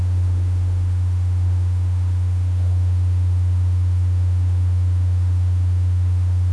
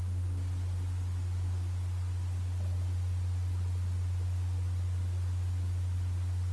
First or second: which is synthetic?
first